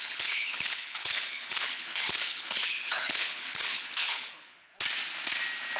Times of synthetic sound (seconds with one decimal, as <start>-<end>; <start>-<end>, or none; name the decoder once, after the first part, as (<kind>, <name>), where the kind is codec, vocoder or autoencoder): 0.0-4.7 (codec, HILCodec)